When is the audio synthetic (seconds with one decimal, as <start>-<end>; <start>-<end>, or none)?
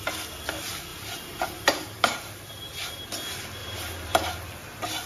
0.9-3.0; 3.6-4.3